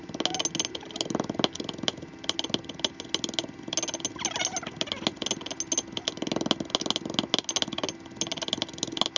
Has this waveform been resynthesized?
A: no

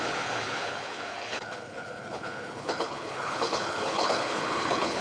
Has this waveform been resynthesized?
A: yes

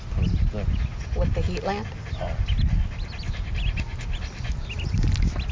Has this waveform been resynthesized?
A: no